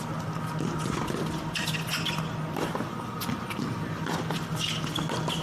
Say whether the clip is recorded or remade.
recorded